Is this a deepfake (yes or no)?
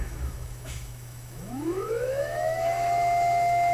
yes